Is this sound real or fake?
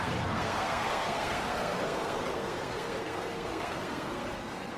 fake